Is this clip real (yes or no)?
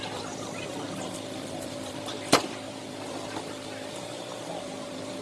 no